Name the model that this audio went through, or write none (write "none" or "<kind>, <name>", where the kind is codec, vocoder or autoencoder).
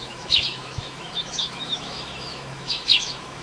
autoencoder, DAC-VAE